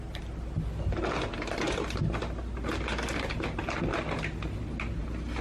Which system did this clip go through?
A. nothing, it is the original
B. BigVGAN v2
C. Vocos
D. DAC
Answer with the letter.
A